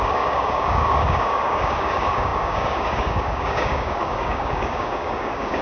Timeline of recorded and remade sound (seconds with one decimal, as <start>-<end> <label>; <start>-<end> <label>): 0.0-5.6 remade